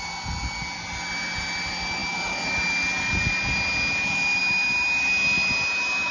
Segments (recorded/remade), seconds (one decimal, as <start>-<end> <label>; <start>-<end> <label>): 0.0-6.1 recorded

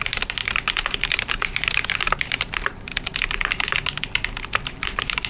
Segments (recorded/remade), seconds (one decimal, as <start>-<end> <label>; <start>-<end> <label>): 0.0-0.4 remade; 0.4-1.1 recorded; 1.1-2.9 remade; 2.9-4.7 recorded; 4.7-5.3 remade

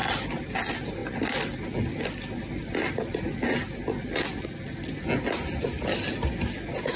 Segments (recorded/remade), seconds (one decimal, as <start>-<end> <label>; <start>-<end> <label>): 0.0-7.0 recorded

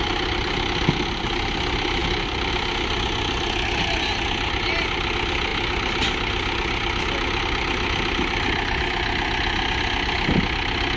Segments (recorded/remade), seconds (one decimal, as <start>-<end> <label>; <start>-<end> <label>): 0.0-2.0 recorded; 2.0-2.5 remade; 2.5-11.0 recorded

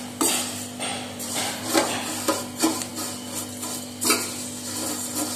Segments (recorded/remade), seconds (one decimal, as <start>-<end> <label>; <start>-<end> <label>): 0.0-0.9 recorded; 0.9-2.4 remade; 2.4-5.4 recorded

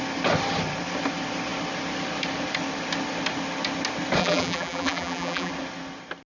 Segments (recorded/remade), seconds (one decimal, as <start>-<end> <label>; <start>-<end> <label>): 0.0-4.2 recorded; 4.2-5.5 remade; 5.5-6.3 recorded

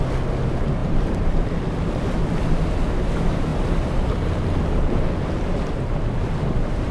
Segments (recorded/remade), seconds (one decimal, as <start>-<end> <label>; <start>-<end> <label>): 0.0-0.8 recorded; 0.8-2.1 remade; 2.1-3.5 recorded; 3.5-5.7 remade; 5.7-6.9 recorded

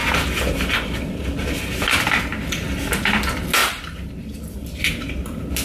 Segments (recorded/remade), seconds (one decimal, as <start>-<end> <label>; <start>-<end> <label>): 0.0-3.6 recorded; 3.6-4.8 remade; 4.8-5.6 recorded